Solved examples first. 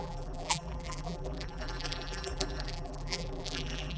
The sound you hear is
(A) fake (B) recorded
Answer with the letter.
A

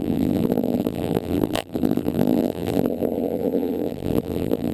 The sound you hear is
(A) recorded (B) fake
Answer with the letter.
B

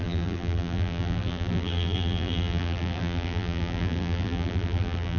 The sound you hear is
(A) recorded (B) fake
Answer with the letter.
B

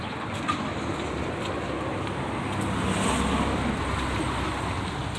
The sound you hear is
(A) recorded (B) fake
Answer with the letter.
A